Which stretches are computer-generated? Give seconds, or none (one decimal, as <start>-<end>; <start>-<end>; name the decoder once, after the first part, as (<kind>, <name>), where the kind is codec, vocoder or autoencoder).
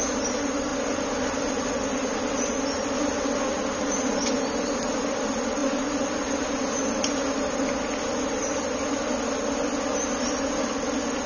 none